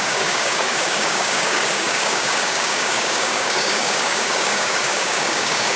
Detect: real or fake fake